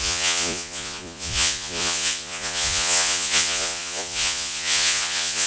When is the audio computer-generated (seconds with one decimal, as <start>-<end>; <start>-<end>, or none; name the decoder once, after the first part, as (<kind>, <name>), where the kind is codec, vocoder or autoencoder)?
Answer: 0.0-5.5 (vocoder, Vocos)